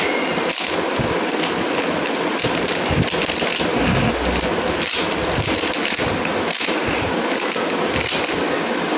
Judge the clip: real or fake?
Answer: real